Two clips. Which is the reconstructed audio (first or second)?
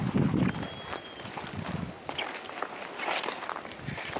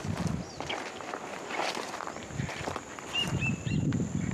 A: second